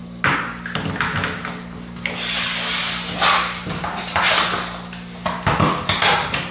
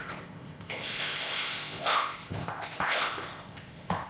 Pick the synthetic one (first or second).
second